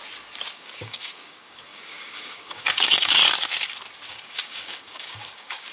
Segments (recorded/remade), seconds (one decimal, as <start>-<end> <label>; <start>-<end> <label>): 0.0-0.5 recorded; 0.5-3.2 remade; 3.2-4.1 recorded; 4.1-5.7 remade